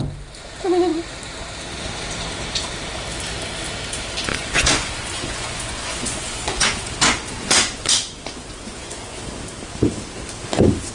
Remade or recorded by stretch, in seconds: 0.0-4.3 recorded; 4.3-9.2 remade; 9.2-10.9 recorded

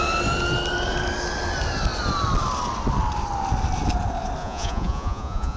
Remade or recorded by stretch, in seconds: 0.0-4.4 recorded; 4.4-5.6 remade

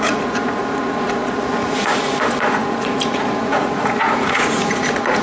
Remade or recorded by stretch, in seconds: 0.0-5.2 remade

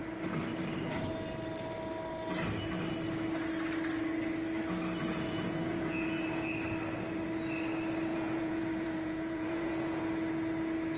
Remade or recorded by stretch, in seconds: 0.0-5.1 recorded; 5.1-6.5 remade; 6.5-8.1 recorded; 8.1-10.0 remade; 10.0-11.0 recorded

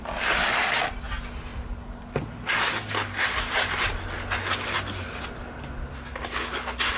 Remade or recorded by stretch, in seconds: 0.0-7.0 recorded

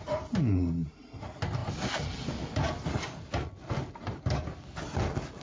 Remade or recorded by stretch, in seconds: 0.0-5.4 recorded